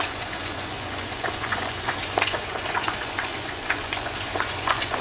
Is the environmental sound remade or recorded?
remade